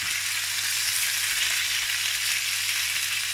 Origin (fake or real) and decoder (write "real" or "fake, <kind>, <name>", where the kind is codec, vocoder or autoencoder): real